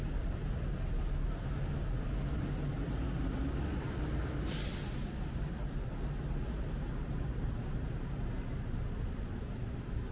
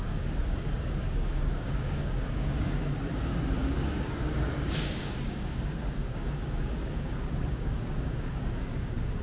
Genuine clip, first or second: first